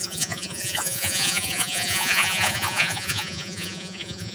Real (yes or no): no